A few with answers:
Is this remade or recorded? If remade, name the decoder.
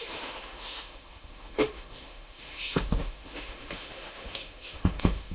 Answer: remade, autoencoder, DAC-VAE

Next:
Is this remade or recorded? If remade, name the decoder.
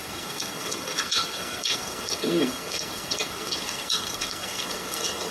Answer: remade, codec, SNAC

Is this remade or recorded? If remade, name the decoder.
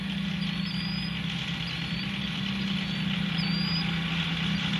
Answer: recorded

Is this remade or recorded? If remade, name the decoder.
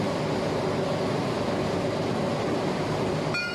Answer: recorded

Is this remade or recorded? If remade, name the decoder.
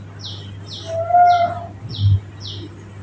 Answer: recorded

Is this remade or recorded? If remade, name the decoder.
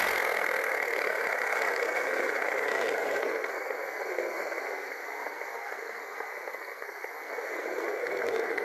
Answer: remade, codec, SNAC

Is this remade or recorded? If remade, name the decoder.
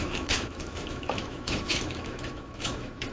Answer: remade, autoencoder, DAC-VAE